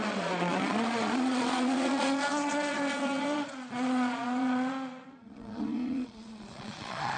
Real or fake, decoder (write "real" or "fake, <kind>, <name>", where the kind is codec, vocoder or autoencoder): fake, vocoder, Vocos